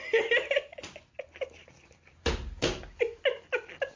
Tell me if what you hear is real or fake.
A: real